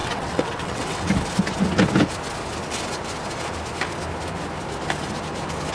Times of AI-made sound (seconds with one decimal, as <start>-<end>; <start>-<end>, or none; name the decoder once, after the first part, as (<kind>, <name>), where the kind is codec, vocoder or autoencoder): 0.0-1.1 (vocoder, WaveNeXt)